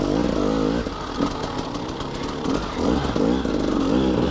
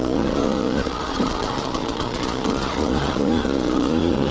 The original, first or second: first